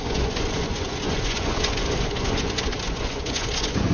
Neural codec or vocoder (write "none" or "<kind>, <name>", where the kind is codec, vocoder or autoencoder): vocoder, Vocos